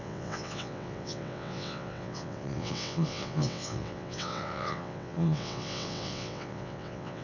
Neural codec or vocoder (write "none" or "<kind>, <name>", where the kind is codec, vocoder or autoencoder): vocoder, WaveNeXt